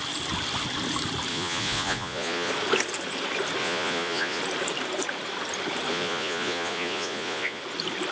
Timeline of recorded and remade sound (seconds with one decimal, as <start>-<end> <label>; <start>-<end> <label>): 0.0-1.3 recorded; 1.3-2.5 remade; 2.5-3.6 recorded; 3.6-4.4 remade; 4.4-5.9 recorded; 5.9-7.6 remade; 7.6-8.1 recorded